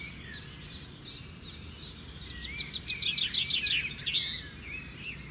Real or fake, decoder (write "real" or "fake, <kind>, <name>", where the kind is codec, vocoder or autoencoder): real